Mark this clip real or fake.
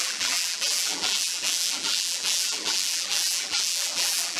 fake